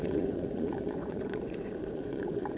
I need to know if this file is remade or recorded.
remade